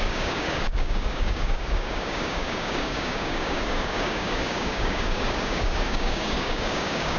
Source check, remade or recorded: remade